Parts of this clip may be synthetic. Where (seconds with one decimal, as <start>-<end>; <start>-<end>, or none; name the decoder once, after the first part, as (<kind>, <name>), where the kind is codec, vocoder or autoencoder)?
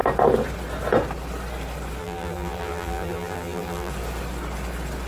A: 2.0-3.9 (vocoder, BigVGAN v2)